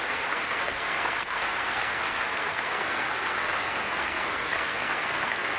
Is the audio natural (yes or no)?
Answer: no